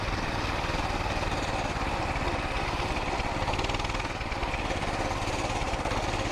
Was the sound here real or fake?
real